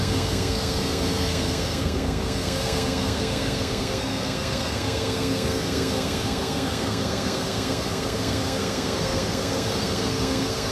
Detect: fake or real fake